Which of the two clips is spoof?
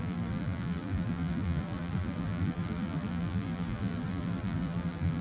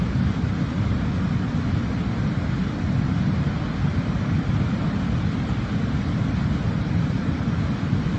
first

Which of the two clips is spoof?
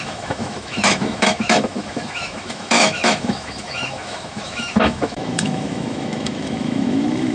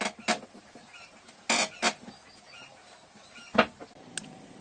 first